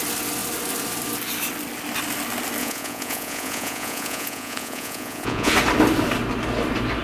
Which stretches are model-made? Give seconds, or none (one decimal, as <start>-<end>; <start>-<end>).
2.6-5.5